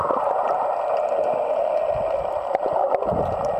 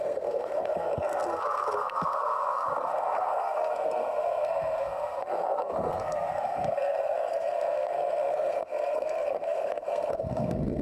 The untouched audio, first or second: first